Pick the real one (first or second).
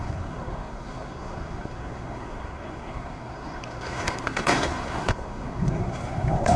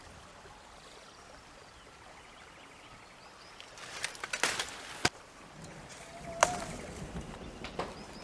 second